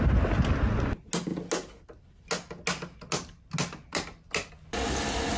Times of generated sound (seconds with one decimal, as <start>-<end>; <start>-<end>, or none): none